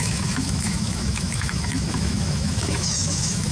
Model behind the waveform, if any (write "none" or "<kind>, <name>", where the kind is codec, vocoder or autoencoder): autoencoder, DAC-VAE